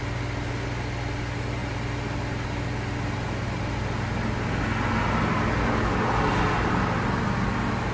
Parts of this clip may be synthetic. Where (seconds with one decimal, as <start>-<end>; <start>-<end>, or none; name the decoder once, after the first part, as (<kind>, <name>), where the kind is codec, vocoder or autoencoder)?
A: none